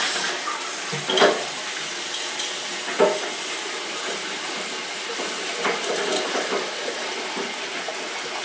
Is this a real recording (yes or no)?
yes